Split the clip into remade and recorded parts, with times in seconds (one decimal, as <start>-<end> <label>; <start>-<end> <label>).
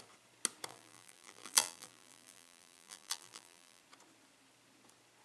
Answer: 0.0-0.7 recorded; 0.7-3.8 remade; 3.8-5.2 recorded